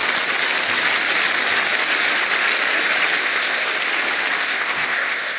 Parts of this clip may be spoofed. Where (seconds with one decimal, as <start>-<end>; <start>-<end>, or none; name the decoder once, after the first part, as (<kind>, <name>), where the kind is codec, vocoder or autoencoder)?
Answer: 3.2-3.7 (codec, ZipCodec); 4.4-5.4